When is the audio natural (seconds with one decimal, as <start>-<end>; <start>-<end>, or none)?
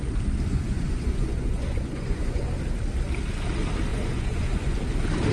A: 0.0-0.5; 2.5-3.9; 4.8-5.3